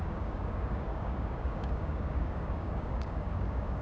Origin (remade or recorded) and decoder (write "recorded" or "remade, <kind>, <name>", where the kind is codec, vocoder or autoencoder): remade, codec, DAC